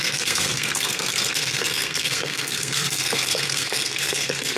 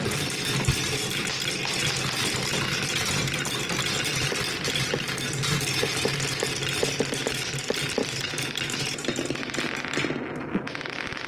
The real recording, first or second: second